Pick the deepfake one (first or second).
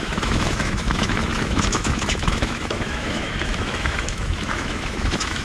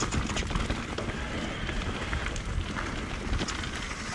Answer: first